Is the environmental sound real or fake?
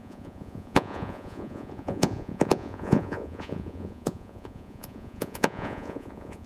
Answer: fake